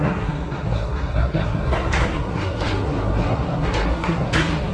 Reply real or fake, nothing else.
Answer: fake